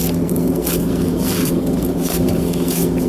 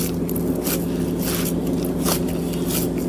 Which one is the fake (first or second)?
first